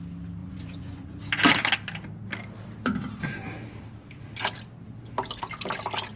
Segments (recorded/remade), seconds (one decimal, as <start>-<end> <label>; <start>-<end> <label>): 0.0-0.4 recorded; 0.4-1.2 remade; 1.2-6.2 recorded